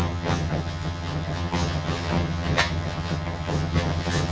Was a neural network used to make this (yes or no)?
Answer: yes